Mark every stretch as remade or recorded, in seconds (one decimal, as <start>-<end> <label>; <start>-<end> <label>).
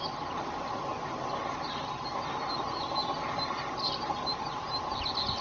0.0-5.4 recorded